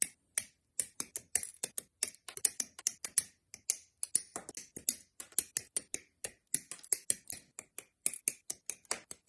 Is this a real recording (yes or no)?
yes